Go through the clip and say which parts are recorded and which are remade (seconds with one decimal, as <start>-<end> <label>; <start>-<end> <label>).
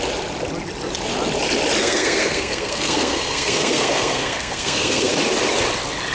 0.0-1.8 recorded; 1.8-5.1 remade; 5.1-6.1 recorded